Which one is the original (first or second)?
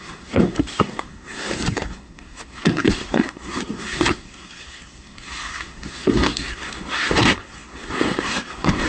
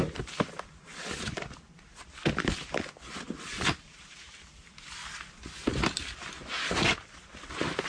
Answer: second